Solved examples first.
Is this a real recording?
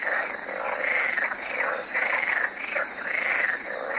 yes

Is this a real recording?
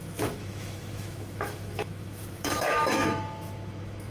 no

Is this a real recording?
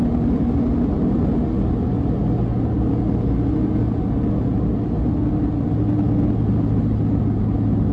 yes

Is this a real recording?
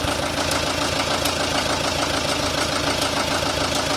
yes